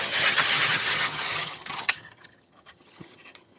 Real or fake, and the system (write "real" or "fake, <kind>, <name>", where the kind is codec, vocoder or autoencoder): fake, vocoder, HiFi-GAN